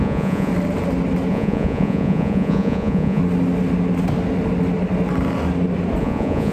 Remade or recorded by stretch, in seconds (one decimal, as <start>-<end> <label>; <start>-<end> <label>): 0.0-0.5 remade; 0.5-1.3 recorded; 1.3-3.2 remade; 3.2-6.0 recorded; 6.0-6.5 remade